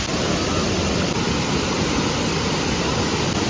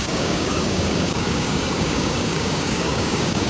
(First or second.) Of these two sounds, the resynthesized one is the second